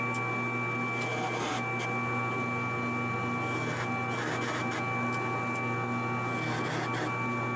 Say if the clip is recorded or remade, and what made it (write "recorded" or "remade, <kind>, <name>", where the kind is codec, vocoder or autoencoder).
recorded